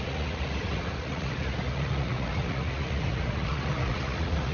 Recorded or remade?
remade